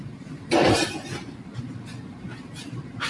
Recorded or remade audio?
remade